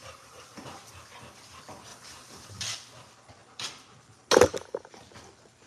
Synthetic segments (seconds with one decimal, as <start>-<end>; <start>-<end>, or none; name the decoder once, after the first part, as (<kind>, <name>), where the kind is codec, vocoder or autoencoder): 0.0-0.9 (vocoder, BigVGAN v2); 1.9-2.6